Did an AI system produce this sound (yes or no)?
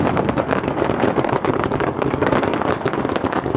yes